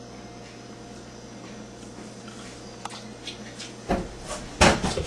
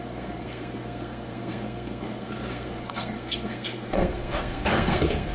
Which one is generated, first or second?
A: second